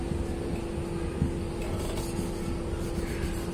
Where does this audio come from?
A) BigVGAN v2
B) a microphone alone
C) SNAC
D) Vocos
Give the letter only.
B